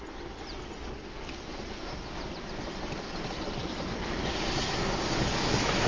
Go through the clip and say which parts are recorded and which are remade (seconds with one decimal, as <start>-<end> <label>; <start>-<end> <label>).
0.0-3.6 recorded; 3.6-4.3 remade; 4.3-5.9 recorded

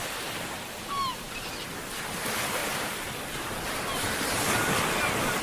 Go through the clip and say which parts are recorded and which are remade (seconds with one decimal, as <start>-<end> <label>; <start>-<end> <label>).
0.0-2.6 recorded; 2.6-3.2 remade; 3.2-5.4 recorded

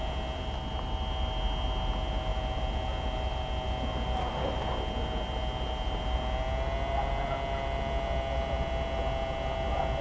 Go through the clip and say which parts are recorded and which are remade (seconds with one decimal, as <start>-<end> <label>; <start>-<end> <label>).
0.0-10.0 recorded

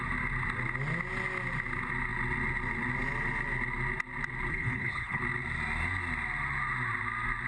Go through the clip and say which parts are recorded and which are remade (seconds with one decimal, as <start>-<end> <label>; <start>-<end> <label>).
0.0-4.5 recorded; 4.5-5.2 remade; 5.2-7.5 recorded

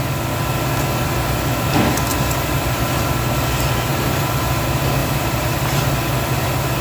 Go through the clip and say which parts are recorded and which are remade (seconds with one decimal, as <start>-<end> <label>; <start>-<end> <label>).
0.0-2.1 recorded; 2.1-3.1 remade; 3.1-3.9 recorded; 3.9-4.6 remade; 4.6-5.0 recorded; 5.0-5.8 remade; 5.8-6.8 recorded

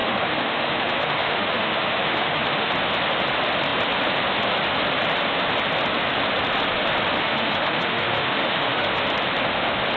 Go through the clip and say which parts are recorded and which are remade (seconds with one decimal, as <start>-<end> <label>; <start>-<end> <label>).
0.0-2.7 remade; 2.7-7.2 recorded; 7.2-9.0 remade; 9.0-10.0 recorded

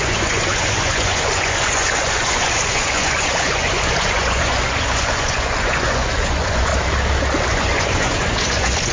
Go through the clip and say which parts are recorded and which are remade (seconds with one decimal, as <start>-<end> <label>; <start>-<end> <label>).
0.0-6.7 remade; 6.7-7.5 recorded; 7.5-8.9 remade

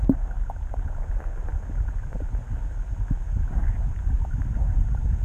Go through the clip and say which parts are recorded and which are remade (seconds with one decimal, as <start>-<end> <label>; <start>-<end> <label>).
0.0-5.2 recorded